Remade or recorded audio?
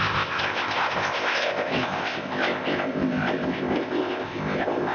remade